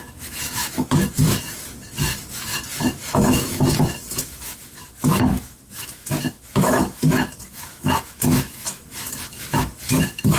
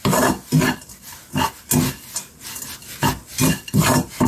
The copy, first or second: first